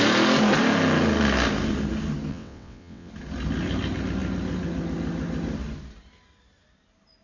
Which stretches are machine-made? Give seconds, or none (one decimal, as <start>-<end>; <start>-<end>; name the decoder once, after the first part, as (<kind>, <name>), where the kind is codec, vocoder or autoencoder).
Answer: 2.3-3.1 (vocoder, WaveNeXt)